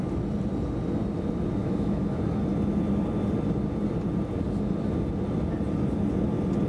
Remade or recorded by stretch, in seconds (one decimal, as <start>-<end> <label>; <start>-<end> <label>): 0.0-1.6 recorded; 1.6-2.2 remade; 2.2-6.7 recorded

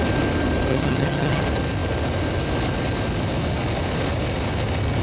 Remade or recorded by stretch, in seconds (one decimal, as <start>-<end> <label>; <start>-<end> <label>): 0.0-0.7 recorded; 0.7-1.4 remade; 1.4-5.0 recorded

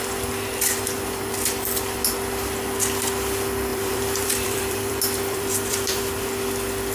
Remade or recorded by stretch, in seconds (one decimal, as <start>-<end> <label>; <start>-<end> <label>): 0.0-3.7 recorded; 3.7-6.0 remade; 6.0-6.9 recorded

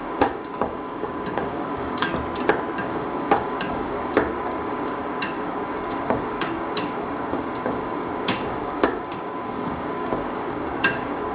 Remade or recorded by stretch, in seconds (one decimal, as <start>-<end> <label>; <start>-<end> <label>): 0.0-2.1 remade; 2.1-2.8 recorded; 2.8-11.3 remade

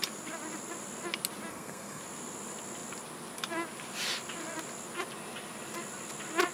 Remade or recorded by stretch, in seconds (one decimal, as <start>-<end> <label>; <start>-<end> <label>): 0.0-1.5 recorded; 1.5-2.0 remade; 2.0-6.5 recorded

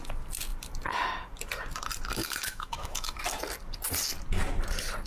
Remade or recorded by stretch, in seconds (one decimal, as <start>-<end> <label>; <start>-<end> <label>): 0.0-2.2 recorded; 2.2-3.2 remade; 3.2-5.1 recorded